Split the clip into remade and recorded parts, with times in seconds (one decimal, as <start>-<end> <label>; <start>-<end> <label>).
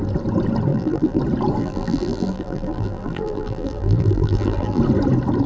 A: 0.0-0.7 recorded; 0.7-1.2 remade; 1.2-1.6 recorded; 1.6-4.8 remade; 4.8-5.5 recorded